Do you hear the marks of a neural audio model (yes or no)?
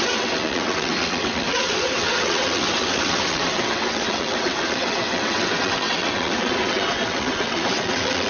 yes